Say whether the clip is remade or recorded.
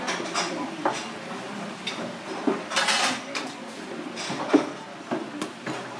recorded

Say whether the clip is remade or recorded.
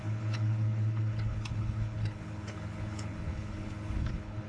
remade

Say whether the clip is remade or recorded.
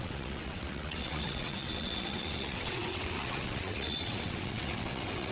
remade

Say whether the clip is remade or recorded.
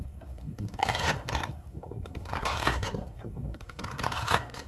remade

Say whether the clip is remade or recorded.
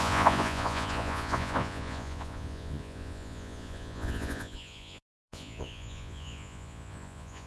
remade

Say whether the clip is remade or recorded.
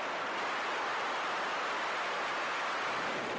recorded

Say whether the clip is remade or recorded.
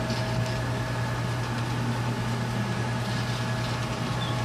recorded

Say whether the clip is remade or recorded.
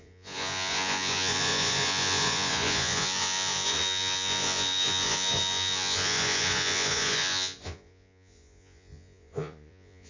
remade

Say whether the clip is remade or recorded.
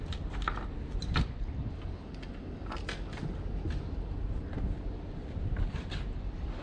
recorded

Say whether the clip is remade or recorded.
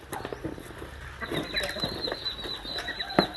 recorded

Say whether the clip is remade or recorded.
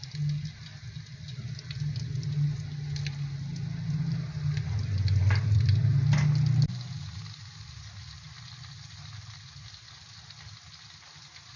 recorded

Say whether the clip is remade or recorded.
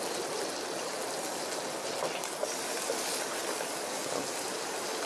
recorded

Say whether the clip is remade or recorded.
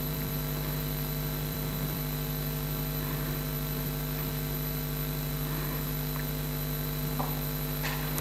remade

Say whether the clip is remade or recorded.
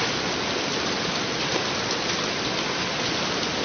recorded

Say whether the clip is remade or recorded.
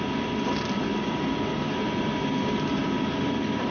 recorded